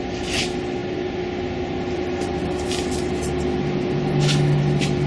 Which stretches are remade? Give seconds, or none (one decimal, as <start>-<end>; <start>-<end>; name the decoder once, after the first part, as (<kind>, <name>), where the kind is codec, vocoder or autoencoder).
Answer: none